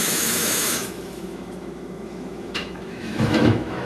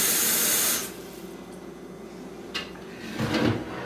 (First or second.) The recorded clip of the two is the second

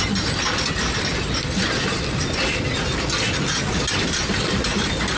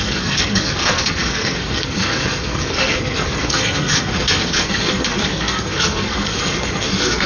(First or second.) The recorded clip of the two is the first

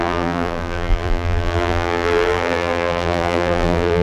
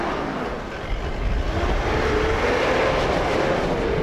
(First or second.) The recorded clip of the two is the second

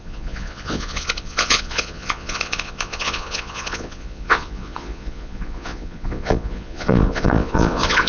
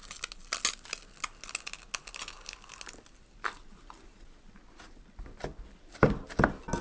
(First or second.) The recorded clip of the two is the second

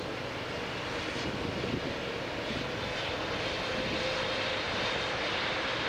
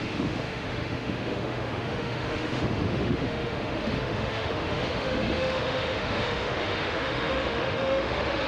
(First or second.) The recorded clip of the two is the first